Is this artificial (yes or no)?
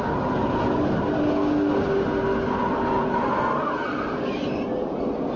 no